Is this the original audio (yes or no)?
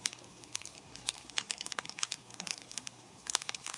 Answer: no